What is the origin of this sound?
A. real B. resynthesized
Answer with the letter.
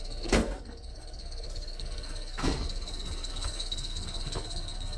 B